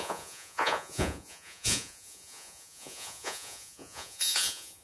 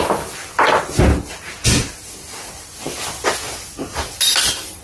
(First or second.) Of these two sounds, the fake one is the first